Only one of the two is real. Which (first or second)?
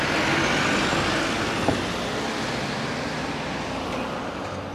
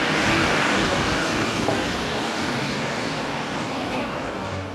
first